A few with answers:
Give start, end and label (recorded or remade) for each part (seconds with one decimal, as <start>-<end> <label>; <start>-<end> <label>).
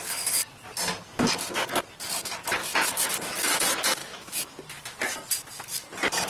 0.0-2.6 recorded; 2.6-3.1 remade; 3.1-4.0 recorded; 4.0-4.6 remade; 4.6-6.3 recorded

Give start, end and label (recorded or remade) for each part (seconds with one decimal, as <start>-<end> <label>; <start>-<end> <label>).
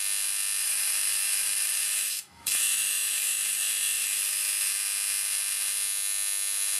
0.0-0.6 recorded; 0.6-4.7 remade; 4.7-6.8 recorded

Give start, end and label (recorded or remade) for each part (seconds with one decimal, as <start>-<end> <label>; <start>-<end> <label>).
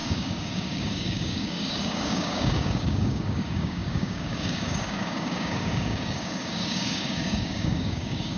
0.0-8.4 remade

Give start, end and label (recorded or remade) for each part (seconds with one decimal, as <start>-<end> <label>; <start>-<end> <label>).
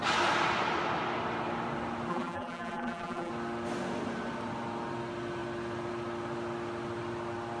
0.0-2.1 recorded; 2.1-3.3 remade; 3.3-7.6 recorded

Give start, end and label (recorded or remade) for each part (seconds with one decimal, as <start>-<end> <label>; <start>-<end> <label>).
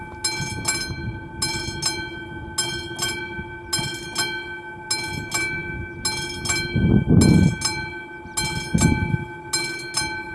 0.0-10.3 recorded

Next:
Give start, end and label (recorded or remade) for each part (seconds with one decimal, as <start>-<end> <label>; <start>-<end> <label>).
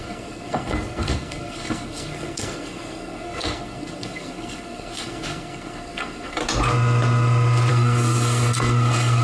0.0-6.4 remade; 6.4-7.7 recorded; 7.7-9.2 remade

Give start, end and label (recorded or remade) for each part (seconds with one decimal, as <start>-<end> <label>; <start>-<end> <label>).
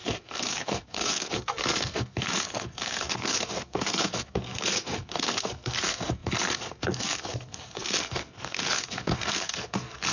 0.0-10.1 remade